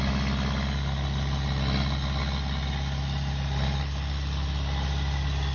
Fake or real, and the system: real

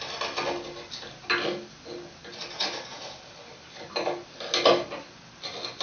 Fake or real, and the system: real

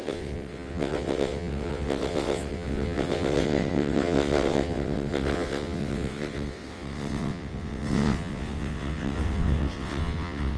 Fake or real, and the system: fake, vocoder, WaveNeXt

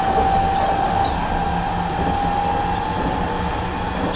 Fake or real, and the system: real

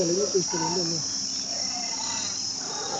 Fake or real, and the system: real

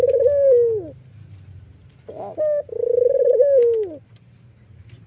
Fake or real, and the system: real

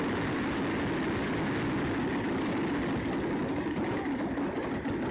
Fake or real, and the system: real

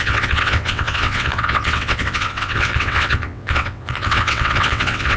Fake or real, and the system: fake, vocoder, WaveNeXt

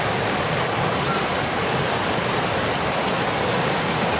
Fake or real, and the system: real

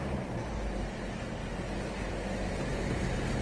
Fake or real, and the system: real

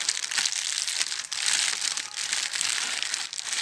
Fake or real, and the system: real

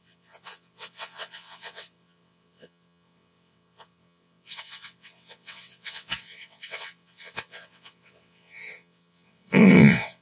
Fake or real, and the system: fake, vocoder, WaveNeXt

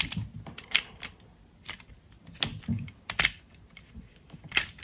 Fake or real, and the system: real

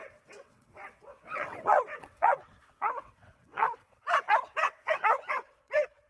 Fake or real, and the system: fake, vocoder, WaveNeXt